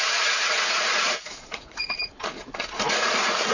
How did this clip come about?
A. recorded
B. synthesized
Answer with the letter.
B